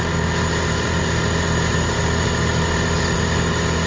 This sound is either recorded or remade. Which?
recorded